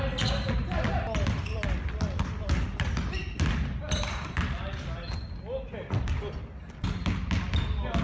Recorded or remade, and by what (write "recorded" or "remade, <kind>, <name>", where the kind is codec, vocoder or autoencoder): recorded